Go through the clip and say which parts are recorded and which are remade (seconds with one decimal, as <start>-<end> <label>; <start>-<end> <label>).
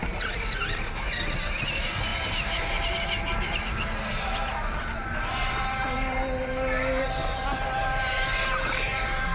0.0-1.1 remade; 1.1-9.3 recorded